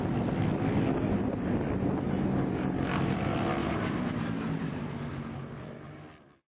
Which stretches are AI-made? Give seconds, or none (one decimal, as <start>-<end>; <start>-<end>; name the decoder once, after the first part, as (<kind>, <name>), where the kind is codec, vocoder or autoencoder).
3.6-4.8 (vocoder, BigVGAN v2)